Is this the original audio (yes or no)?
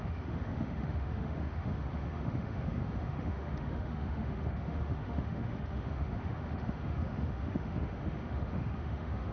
no